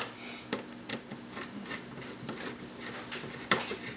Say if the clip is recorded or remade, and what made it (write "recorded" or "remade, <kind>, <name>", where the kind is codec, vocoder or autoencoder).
recorded